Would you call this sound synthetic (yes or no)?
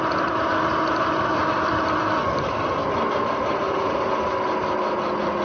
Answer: no